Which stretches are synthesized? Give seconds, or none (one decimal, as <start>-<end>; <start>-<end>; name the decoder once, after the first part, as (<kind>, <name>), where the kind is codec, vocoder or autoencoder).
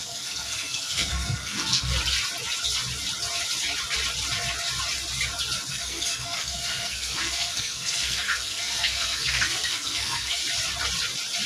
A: 0.0-1.9 (codec, SNAC); 5.7-10.4